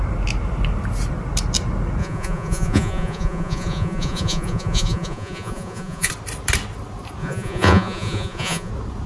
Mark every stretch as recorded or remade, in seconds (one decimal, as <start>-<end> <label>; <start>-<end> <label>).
0.0-2.0 recorded; 2.0-6.1 remade; 6.1-7.2 recorded; 7.2-8.7 remade; 8.7-9.1 recorded